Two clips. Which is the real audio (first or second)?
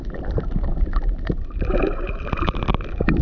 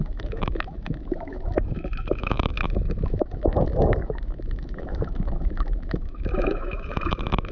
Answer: first